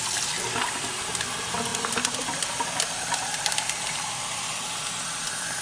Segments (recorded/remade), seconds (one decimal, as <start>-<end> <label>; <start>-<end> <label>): 0.0-5.6 recorded